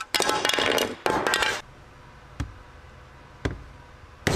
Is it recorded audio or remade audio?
recorded